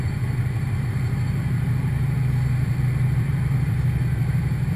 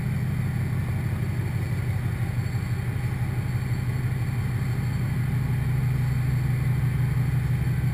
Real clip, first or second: second